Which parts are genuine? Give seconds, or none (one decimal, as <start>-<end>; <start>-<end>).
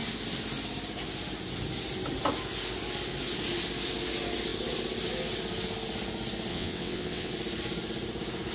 0.0-6.5; 7.3-8.5